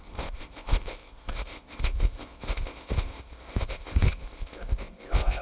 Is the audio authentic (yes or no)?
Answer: no